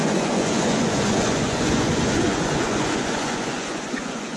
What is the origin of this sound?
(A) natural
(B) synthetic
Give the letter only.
B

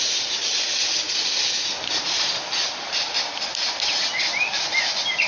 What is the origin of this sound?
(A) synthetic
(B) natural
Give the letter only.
B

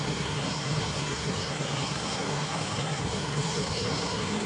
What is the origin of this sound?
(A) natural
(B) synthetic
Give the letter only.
B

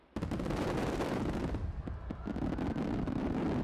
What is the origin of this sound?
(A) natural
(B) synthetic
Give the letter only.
B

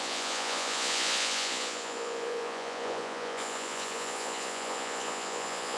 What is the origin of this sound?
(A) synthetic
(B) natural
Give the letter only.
A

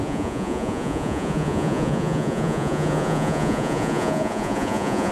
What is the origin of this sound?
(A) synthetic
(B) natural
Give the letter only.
A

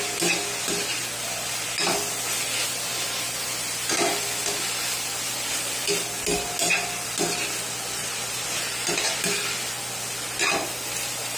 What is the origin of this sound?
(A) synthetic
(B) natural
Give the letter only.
B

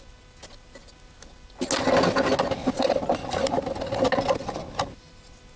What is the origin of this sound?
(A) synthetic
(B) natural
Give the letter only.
B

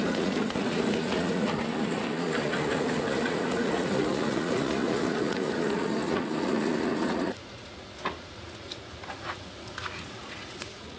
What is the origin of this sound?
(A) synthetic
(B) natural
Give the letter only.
A